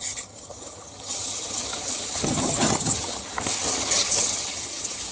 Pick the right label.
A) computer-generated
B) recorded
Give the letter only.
A